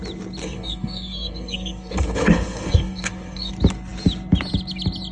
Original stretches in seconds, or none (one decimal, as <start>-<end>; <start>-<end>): 0.0-0.4; 3.5-5.1